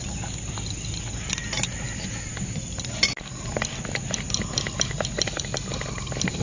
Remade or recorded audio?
recorded